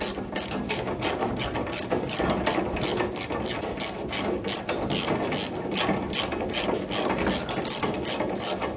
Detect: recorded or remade recorded